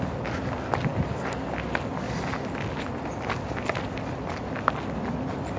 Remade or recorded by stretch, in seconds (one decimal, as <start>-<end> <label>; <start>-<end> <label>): 0.0-5.6 recorded